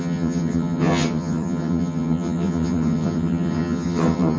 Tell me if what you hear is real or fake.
fake